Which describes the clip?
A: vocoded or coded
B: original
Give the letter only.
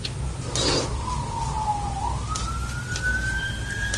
B